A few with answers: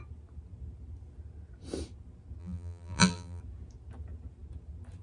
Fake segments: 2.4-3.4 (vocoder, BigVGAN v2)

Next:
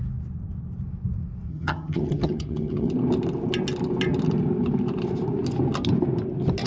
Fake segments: 1.5-2.9 (vocoder, HiFi-GAN)

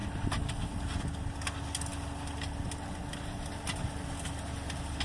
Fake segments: none

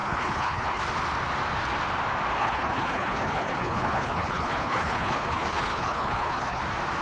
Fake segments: 0.0-0.8 (codec, HILCodec); 2.4-6.6

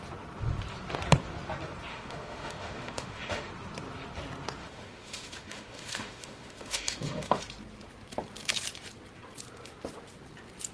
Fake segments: 1.9-3.5 (autoencoder, DAC-VAE); 4.6-7.4

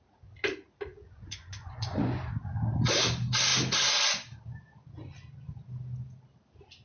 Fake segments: 0.9-2.2 (vocoder, Vocos)